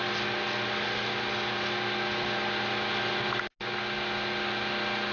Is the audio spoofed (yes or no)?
no